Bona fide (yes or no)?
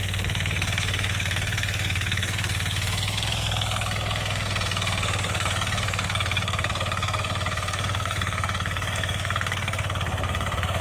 no